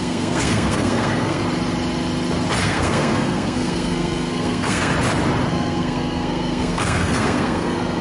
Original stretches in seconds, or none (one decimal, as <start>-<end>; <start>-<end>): 1.4-2.6; 4.9-5.5